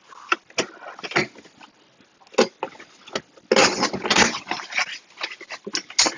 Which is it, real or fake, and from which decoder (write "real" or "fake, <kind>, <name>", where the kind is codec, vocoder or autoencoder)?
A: real